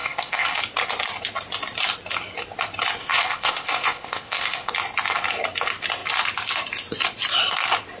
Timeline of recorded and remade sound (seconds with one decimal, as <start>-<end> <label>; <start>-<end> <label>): 0.0-0.6 remade; 0.6-3.0 recorded; 3.0-4.7 remade; 4.7-8.0 recorded